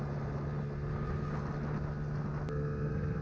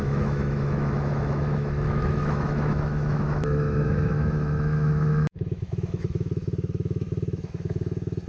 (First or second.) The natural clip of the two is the first